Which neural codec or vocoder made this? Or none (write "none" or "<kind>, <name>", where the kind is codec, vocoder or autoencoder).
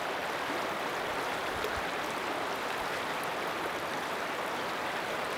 none